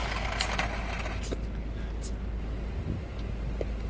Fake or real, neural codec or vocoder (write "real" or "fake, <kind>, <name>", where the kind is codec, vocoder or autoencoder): real